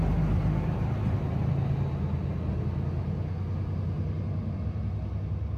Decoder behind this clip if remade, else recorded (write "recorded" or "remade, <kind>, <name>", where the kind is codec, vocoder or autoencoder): recorded